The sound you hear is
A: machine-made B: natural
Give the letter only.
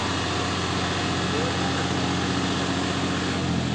B